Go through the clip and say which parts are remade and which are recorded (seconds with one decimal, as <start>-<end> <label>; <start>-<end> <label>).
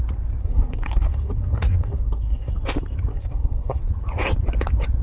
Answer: 0.0-0.4 recorded; 0.4-2.5 remade; 2.5-3.1 recorded; 3.1-3.8 remade; 3.8-5.0 recorded